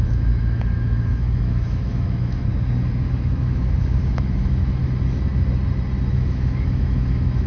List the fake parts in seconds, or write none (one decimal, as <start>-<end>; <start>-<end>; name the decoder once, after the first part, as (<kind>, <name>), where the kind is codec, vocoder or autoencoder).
0.0-2.5 (autoencoder, DAC-VAE); 3.1-4.8; 6.1-7.5